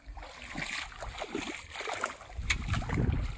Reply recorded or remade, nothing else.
recorded